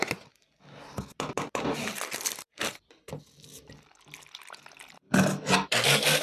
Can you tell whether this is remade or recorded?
recorded